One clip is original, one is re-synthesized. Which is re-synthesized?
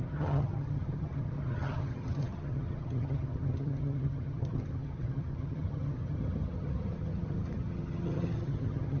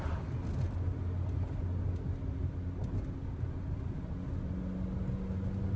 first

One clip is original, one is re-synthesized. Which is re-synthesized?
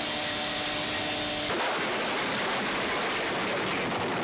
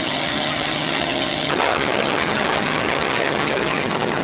second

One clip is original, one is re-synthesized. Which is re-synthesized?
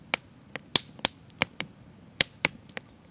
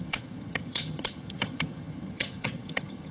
second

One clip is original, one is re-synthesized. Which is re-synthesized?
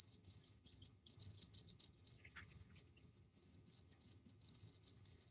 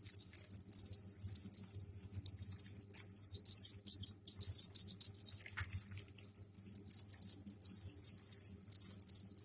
first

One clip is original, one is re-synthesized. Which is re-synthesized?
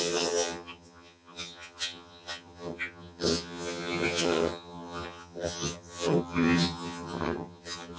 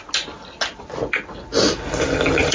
first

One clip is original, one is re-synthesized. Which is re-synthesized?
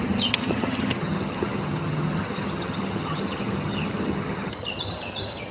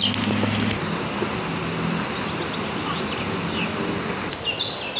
first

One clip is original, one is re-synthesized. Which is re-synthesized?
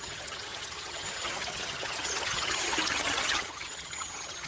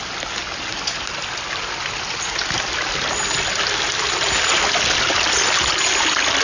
first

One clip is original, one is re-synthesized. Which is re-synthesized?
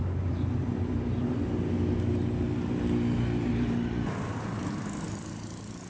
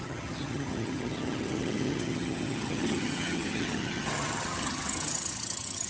second